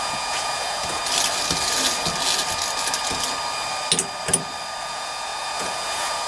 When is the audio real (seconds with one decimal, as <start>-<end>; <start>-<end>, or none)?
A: 1.0-4.8